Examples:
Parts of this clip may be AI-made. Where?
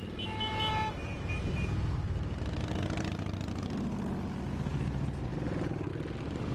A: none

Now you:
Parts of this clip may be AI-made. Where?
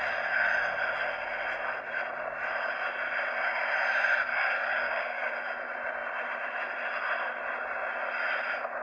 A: 4.3-5.3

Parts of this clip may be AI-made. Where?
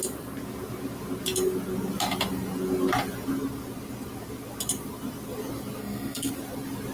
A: 5.8-6.3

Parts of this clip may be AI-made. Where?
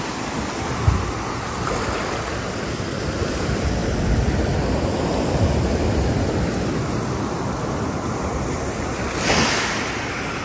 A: none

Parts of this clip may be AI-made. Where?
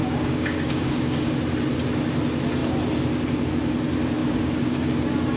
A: 0.0-1.3; 4.2-4.9